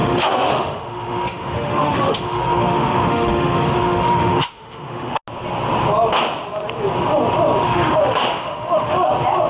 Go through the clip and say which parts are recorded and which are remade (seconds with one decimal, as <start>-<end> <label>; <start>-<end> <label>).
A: 0.0-5.2 remade; 5.2-7.6 recorded; 7.6-9.1 remade; 9.1-9.5 recorded